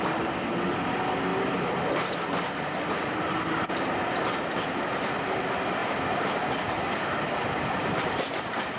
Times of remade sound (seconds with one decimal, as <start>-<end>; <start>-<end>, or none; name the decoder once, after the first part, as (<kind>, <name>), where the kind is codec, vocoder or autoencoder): none